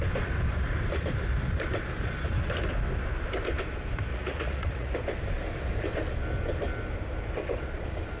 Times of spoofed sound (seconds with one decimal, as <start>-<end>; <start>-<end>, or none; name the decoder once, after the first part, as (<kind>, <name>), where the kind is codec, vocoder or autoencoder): 4.1-4.9 (vocoder, Vocos)